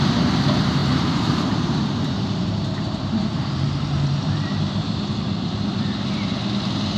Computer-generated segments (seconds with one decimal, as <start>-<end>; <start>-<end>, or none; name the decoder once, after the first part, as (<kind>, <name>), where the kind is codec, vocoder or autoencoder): 0.8-5.0 (vocoder, BigVGAN v2)